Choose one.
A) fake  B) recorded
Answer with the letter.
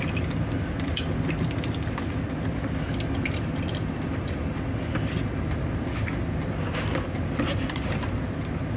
B